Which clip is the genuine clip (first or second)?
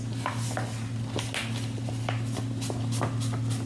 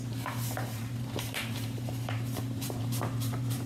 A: first